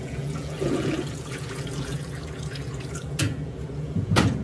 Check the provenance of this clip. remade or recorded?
remade